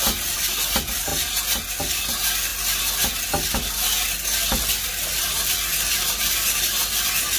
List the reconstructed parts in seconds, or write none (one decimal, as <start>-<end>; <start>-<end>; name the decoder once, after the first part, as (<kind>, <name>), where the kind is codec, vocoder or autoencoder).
none